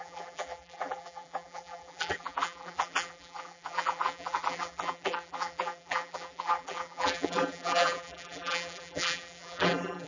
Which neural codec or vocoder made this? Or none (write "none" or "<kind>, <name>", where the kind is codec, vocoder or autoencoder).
vocoder, BigVGAN v2